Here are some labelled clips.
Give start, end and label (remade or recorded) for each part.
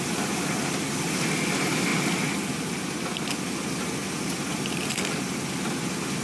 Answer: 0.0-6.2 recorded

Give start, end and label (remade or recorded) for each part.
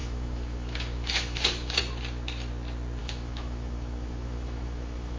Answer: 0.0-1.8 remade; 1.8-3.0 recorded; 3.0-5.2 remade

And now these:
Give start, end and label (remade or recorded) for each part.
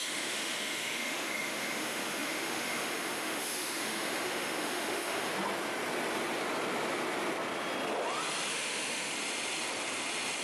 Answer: 0.0-5.3 remade; 5.3-8.5 recorded; 8.5-9.1 remade; 9.1-10.4 recorded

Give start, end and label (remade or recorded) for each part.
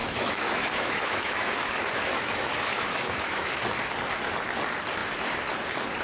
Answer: 0.0-3.6 remade; 3.6-6.0 recorded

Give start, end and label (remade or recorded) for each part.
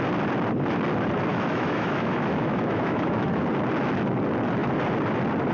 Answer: 0.0-1.3 recorded; 1.3-3.4 remade; 3.4-5.5 recorded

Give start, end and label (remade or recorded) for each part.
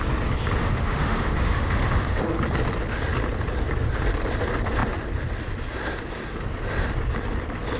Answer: 0.0-0.6 recorded; 0.6-2.2 remade; 2.2-7.8 recorded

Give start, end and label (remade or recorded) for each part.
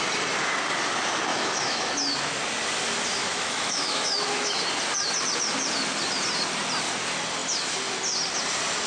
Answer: 0.0-1.3 recorded; 1.3-1.9 remade; 1.9-3.2 recorded; 3.2-4.6 remade; 4.6-8.9 recorded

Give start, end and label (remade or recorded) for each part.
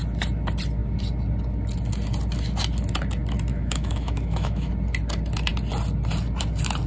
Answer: 0.0-3.5 recorded; 3.5-4.7 remade; 4.7-6.9 recorded